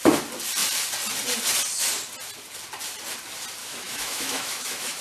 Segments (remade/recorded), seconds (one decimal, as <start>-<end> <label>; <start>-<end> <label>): 0.0-3.6 recorded; 3.6-5.0 remade